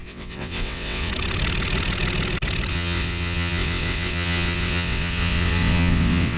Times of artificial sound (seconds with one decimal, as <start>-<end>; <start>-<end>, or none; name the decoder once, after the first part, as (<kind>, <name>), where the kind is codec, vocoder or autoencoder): 0.0-1.1 (vocoder, WaveNeXt); 2.7-6.4

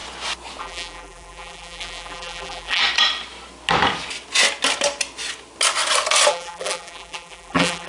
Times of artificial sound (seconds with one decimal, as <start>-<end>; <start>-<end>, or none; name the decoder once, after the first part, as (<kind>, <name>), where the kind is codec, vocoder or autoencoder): 0.6-2.8 (vocoder, BigVGAN v2); 6.3-7.9